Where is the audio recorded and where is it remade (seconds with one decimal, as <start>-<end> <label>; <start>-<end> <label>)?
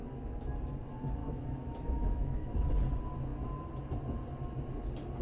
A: 0.0-1.2 recorded; 1.2-2.7 remade; 2.7-5.2 recorded